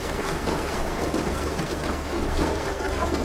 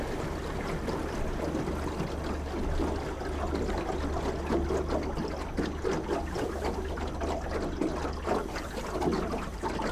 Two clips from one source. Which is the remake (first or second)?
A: first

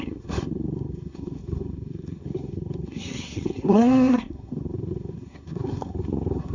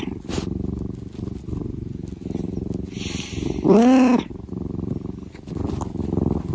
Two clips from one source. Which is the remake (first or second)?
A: first